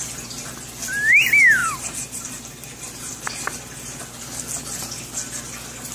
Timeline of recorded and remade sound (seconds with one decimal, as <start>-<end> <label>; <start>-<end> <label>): 0.0-1.6 recorded; 1.6-4.0 remade; 4.0-5.9 recorded